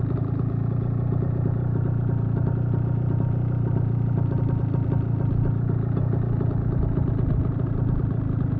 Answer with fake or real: real